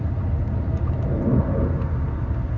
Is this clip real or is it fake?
real